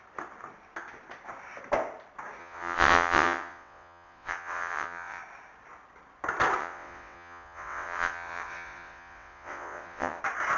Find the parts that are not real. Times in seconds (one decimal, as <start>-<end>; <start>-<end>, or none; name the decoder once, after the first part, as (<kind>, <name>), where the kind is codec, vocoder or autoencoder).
2.4-5.2 (vocoder, WaveNeXt); 6.6-10.2